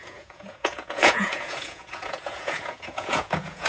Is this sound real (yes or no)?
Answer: no